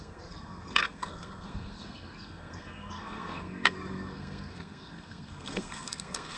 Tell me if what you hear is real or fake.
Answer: fake